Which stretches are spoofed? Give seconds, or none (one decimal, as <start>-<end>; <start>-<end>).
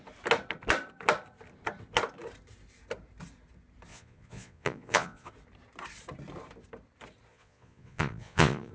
3.9-5.3; 7.3-8.7